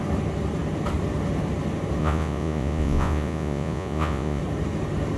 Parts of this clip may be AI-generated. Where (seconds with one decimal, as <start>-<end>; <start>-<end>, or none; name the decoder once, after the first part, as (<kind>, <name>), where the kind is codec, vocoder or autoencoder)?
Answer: 2.0-4.4 (vocoder, Vocos)